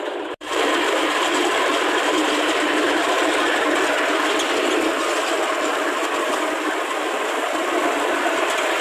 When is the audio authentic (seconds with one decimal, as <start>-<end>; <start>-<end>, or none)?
3.0-7.9